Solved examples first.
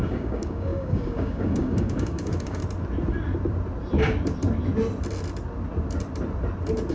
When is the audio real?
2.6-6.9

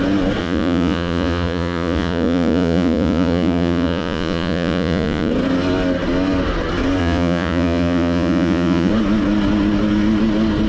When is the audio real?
0.0-0.4; 5.3-7.0; 8.9-10.7